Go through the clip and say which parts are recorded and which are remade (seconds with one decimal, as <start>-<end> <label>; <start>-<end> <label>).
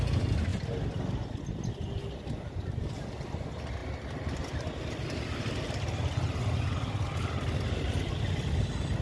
0.0-9.0 recorded